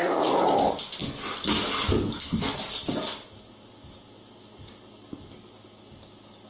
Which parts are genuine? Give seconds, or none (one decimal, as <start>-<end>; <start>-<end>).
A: 0.0-6.5